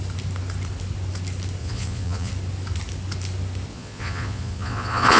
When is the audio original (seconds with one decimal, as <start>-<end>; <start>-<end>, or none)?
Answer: 0.0-1.6; 2.3-3.7